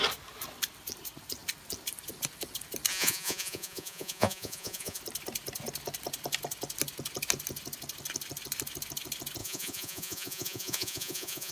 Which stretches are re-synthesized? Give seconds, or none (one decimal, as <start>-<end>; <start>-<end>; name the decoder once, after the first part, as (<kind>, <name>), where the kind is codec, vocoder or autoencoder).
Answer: 2.9-5.0 (vocoder, Vocos); 9.4-11.5